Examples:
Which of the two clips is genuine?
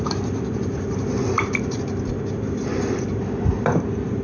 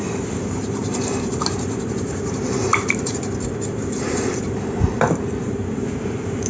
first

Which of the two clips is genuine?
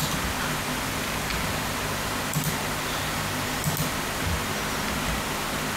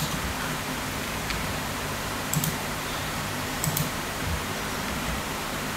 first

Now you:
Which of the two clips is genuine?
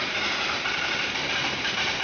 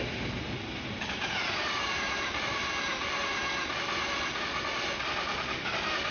second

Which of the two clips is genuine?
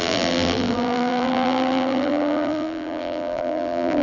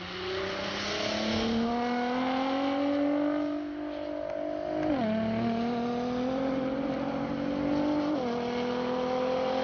second